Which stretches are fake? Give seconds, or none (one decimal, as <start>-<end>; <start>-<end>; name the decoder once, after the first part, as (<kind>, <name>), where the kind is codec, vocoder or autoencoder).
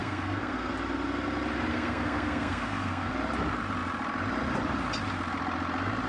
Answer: 0.0-0.7 (codec, SNAC); 1.7-3.1